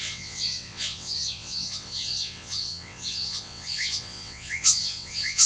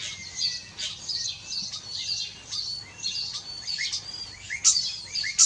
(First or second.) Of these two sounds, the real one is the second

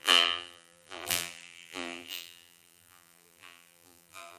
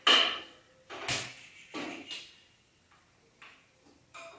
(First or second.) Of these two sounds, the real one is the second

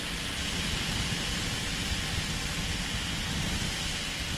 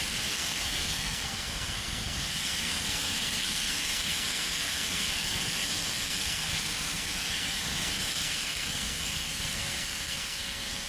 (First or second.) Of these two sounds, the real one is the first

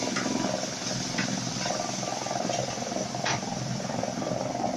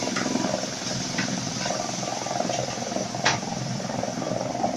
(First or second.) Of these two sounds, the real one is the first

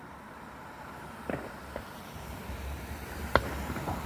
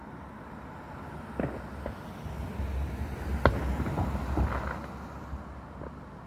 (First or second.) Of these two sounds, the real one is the second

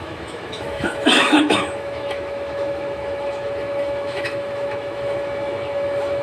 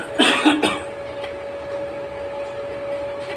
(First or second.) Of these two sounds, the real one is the second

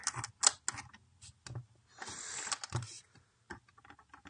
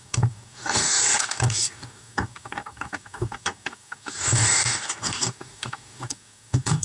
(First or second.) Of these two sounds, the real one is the first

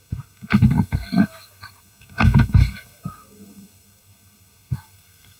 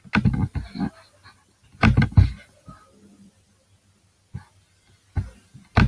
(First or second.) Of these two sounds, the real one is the second